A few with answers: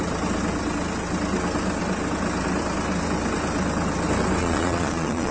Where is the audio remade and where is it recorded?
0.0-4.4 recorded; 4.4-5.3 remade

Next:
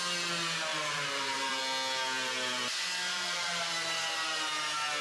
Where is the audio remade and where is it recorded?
0.0-0.7 recorded; 0.7-1.6 remade; 1.6-3.1 recorded; 3.1-3.7 remade; 3.7-5.0 recorded